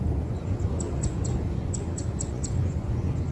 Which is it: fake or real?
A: fake